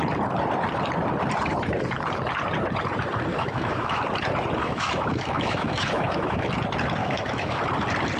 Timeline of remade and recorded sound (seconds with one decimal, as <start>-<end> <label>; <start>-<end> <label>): 0.0-3.3 recorded; 3.3-4.0 remade; 4.0-4.6 recorded; 4.6-6.5 remade; 6.5-7.0 recorded; 7.0-7.6 remade; 7.6-8.2 recorded